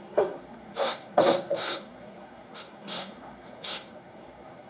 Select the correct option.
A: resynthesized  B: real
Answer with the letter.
A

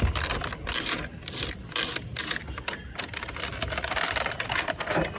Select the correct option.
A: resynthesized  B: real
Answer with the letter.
B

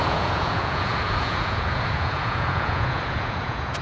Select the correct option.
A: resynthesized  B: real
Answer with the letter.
A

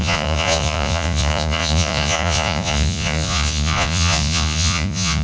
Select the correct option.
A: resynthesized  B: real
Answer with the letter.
A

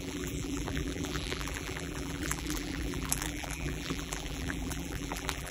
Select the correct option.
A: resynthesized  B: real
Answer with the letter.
A